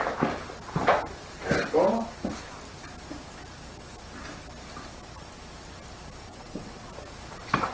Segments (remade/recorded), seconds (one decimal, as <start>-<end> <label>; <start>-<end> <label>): 0.0-6.3 recorded; 6.3-6.9 remade; 6.9-7.7 recorded